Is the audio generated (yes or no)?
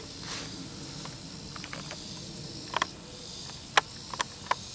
no